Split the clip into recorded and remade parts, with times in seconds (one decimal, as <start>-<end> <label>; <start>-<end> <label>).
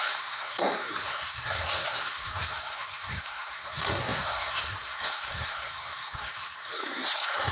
0.0-7.5 remade